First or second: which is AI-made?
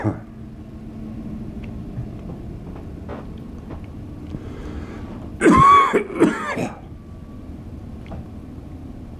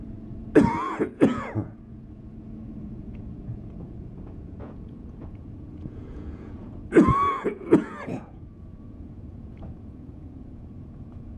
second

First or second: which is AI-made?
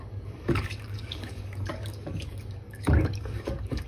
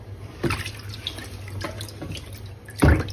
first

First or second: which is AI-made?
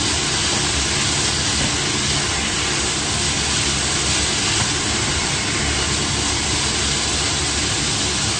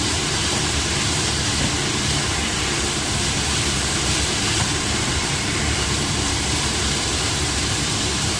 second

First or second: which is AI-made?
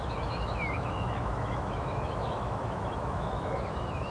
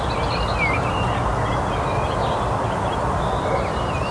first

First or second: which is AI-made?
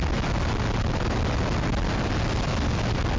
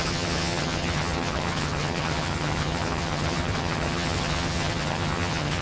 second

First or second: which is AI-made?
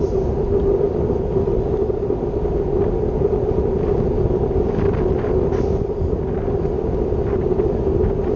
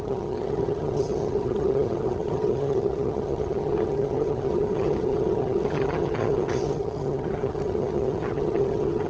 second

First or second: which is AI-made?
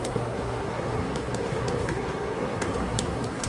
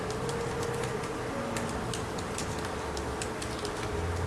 first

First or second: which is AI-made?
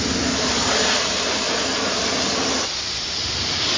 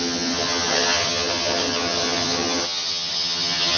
second